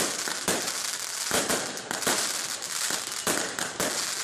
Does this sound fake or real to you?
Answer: real